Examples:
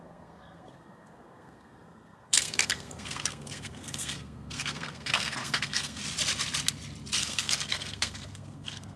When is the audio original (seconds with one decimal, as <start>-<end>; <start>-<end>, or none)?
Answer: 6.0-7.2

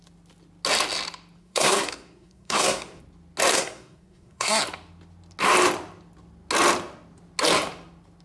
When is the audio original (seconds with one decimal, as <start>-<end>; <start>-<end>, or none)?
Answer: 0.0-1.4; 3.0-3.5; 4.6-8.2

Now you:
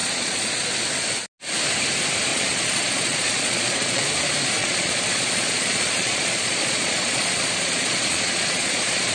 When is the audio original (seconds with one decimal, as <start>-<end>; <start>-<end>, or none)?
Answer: 0.7-2.3; 4.0-4.6

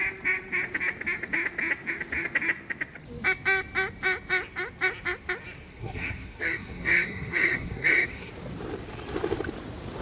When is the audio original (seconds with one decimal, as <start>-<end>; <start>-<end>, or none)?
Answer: 0.0-5.7; 8.3-10.0

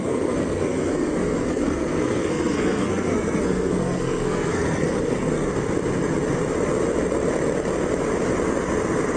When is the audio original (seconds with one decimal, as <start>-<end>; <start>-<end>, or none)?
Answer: 5.5-9.2

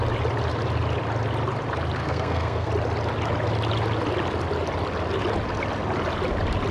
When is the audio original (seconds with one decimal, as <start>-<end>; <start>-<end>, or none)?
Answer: 0.0-2.0; 2.7-6.7